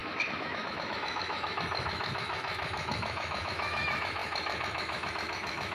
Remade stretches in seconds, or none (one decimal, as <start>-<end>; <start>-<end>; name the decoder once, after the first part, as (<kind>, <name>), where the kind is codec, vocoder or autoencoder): 0.0-5.7 (autoencoder, DAC-VAE)